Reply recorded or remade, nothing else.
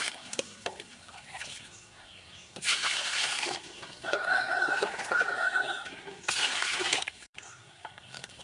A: remade